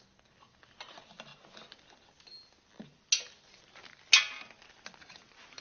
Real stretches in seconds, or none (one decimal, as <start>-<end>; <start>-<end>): 0.0-5.6